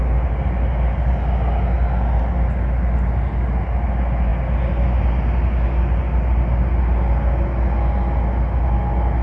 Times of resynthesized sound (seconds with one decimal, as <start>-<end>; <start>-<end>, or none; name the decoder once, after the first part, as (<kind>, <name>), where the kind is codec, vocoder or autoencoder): none